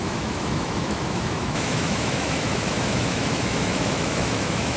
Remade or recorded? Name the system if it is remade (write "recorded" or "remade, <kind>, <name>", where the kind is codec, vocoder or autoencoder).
remade, autoencoder, DAC-VAE